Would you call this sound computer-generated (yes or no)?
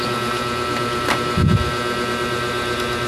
no